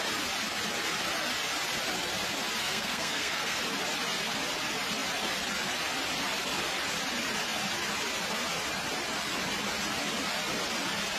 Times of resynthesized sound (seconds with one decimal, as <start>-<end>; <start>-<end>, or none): 2.6-3.6